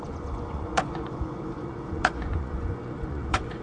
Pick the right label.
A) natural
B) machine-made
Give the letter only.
B